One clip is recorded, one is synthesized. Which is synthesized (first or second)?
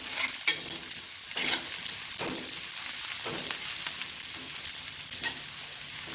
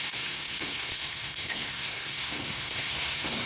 second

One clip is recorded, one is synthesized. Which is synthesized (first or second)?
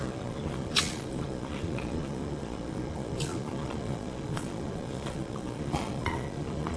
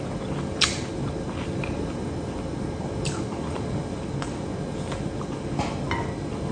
first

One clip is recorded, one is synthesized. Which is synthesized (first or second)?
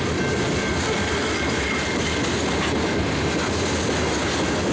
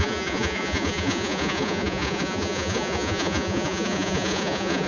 second